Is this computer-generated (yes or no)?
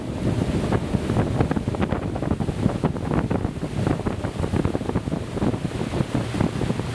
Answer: no